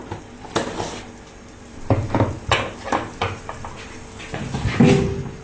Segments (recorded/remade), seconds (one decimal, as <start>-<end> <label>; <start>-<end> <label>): 0.0-2.9 recorded; 2.9-3.6 remade; 3.6-5.4 recorded